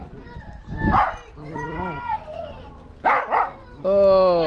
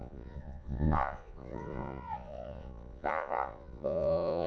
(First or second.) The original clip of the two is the first